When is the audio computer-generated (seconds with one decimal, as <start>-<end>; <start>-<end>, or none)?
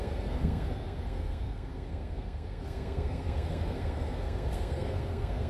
0.0-5.5